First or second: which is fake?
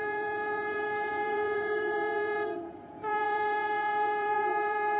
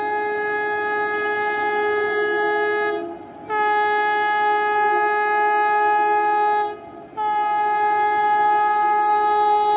first